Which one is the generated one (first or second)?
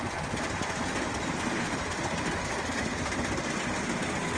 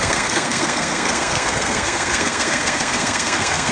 second